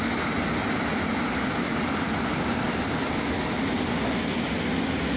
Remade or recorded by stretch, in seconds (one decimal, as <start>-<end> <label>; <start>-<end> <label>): 0.0-5.2 recorded